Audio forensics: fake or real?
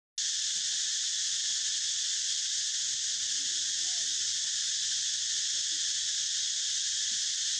real